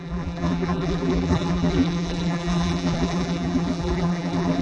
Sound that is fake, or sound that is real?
fake